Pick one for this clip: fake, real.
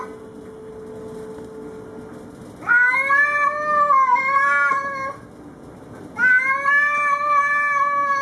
real